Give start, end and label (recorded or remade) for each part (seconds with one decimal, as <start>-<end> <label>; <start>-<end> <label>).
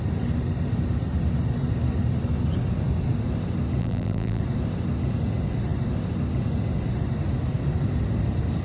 0.0-3.8 recorded; 3.8-4.4 remade; 4.4-8.6 recorded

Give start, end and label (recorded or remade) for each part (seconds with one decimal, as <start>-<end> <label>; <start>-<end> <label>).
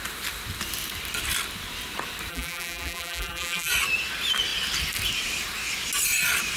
0.0-2.3 recorded; 2.3-3.7 remade; 3.7-6.6 recorded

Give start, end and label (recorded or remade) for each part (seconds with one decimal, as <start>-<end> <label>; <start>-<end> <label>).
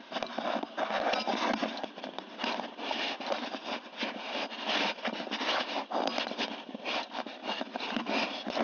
0.0-8.6 recorded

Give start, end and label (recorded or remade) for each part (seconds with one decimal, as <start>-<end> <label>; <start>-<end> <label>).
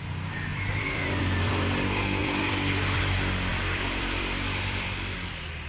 0.0-0.5 recorded; 0.5-1.5 remade; 1.5-2.2 recorded; 2.2-3.0 remade; 3.0-3.5 recorded; 3.5-5.3 remade; 5.3-5.7 recorded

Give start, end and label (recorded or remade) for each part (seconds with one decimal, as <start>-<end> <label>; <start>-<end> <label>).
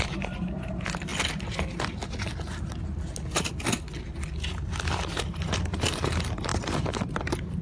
0.0-1.1 remade; 1.1-4.9 recorded; 4.9-7.6 remade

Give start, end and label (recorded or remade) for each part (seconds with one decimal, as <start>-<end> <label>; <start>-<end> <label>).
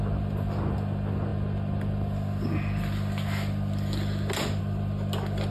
0.0-5.5 recorded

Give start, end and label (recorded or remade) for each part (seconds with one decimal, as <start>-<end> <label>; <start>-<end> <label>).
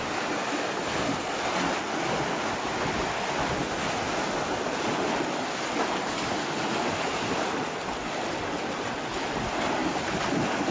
0.0-9.8 recorded; 9.8-10.7 remade